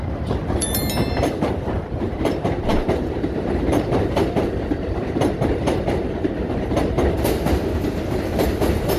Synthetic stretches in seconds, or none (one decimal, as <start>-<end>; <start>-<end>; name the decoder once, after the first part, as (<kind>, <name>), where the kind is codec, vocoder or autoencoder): 0.0-9.0 (vocoder, BigVGAN v2)